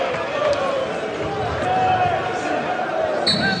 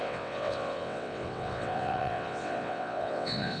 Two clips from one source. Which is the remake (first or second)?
second